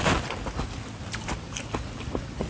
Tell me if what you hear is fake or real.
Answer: real